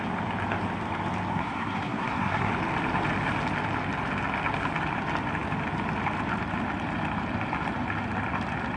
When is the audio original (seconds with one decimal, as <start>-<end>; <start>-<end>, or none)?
0.0-1.3; 2.5-8.8